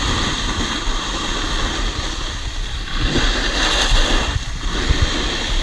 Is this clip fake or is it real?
real